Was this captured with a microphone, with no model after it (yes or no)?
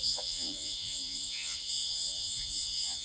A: no